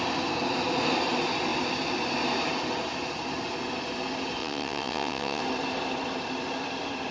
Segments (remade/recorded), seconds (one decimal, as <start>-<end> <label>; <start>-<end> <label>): 0.0-4.4 recorded; 4.4-5.4 remade; 5.4-7.1 recorded